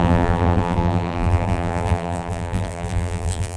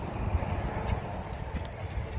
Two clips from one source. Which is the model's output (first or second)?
first